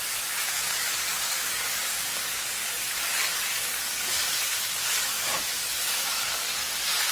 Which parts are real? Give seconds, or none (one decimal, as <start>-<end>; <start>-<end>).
none